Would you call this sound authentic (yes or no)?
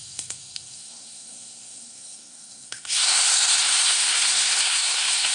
no